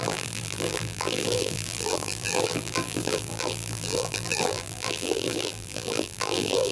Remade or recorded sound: remade